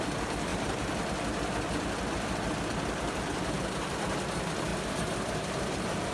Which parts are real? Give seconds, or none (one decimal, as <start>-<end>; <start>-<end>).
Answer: none